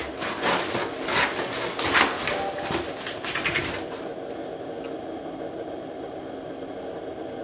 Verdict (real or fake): real